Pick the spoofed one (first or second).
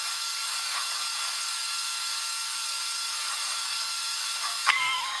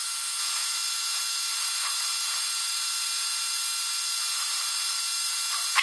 first